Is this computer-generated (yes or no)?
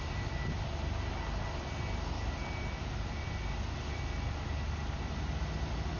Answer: no